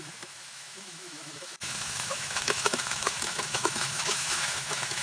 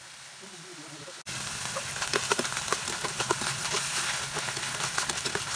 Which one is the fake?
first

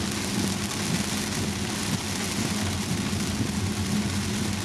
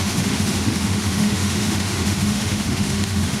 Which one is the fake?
second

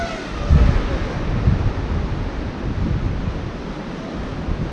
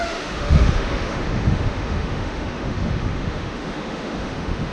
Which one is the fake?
second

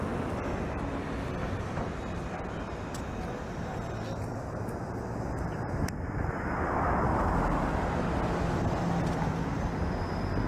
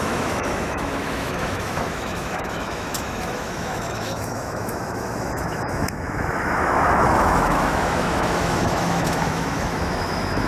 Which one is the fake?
second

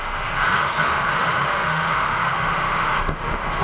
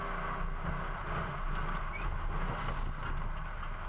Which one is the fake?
first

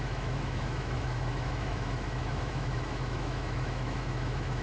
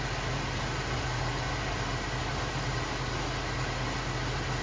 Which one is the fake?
first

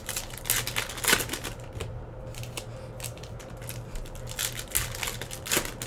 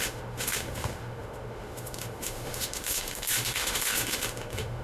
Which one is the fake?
second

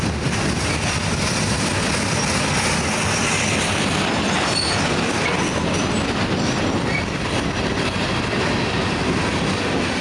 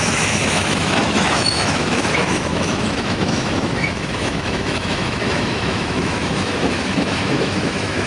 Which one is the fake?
second